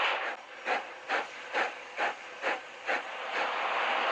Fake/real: real